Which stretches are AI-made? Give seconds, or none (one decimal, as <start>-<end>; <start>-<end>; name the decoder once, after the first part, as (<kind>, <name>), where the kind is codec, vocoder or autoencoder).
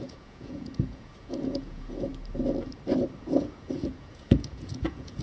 0.0-2.1 (vocoder, Vocos); 3.2-5.2